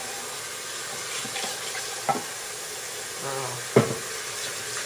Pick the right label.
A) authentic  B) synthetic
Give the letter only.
A